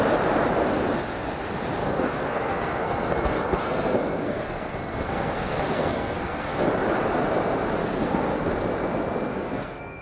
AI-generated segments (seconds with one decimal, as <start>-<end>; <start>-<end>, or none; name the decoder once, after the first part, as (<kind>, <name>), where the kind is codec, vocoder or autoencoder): 1.8-6.6 (codec, SNAC); 7.8-8.4; 9.3-10.0